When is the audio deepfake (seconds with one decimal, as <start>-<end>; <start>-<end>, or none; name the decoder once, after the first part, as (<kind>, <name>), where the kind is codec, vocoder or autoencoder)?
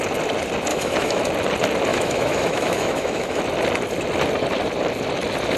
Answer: 0.7-1.2 (autoencoder, DAC-VAE); 1.9-3.4